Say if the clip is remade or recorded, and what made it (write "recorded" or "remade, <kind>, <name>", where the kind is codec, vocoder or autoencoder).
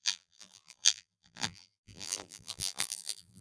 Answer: remade, vocoder, BigVGAN v2